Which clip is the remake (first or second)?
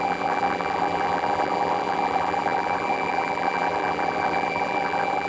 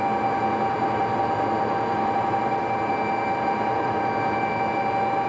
first